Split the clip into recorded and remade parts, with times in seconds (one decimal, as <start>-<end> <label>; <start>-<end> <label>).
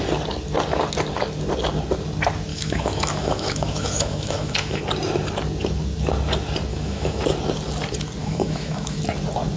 0.0-2.5 recorded; 2.5-4.8 remade; 4.8-6.7 recorded; 6.7-7.2 remade; 7.2-8.2 recorded; 8.2-9.0 remade; 9.0-9.6 recorded